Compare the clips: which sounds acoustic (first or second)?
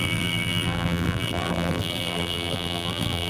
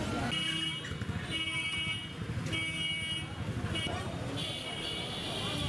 second